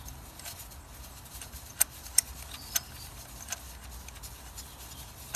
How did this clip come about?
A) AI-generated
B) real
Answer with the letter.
B